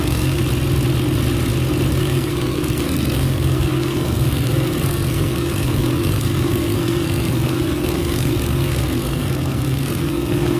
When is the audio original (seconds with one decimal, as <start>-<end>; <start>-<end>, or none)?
0.4-2.0